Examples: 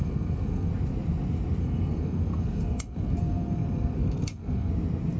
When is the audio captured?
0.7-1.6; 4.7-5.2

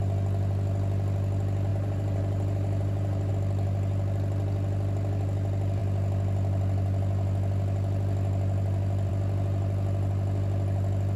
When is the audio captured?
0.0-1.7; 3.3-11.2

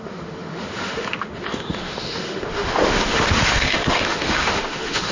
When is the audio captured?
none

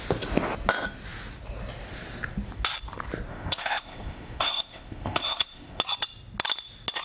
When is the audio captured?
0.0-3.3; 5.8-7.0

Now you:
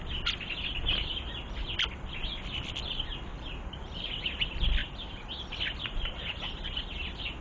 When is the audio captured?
0.0-7.4

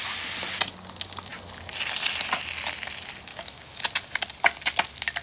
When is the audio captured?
0.0-3.3; 3.8-5.2